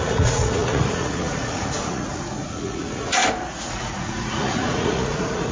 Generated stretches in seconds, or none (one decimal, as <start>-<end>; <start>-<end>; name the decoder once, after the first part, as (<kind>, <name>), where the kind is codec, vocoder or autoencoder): 0.0-3.2 (vocoder, Vocos); 3.7-5.5